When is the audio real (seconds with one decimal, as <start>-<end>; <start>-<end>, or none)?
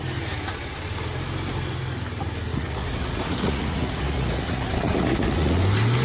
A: 0.0-2.5; 5.6-6.0